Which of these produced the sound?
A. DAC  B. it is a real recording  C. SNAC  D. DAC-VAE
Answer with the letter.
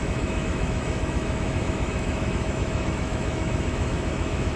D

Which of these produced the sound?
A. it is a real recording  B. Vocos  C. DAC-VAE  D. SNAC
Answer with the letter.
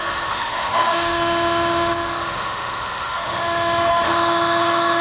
C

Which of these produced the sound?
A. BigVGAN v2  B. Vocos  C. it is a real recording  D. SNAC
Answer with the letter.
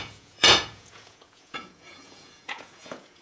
B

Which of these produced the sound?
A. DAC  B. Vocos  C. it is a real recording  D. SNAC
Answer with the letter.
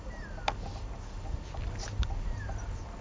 C